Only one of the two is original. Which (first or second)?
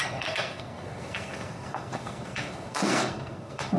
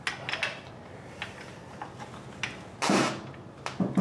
second